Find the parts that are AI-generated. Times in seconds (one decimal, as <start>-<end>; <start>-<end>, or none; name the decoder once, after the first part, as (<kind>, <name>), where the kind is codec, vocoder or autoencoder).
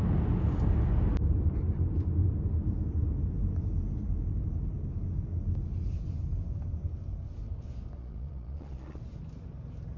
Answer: 8.0-9.0 (vocoder, Vocos)